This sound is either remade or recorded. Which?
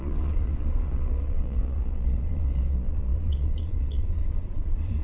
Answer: remade